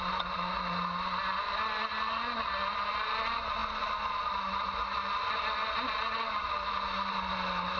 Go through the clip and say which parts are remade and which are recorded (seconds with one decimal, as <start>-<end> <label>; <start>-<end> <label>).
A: 0.0-7.8 recorded